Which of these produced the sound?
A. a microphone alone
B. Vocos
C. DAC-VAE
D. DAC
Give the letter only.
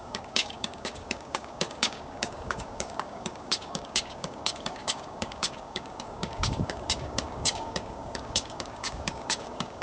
D